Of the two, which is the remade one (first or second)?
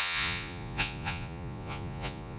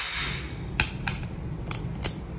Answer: first